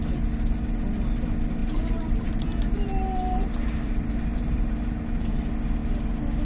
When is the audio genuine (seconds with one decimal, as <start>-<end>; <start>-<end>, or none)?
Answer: 0.0-1.6; 5.3-6.5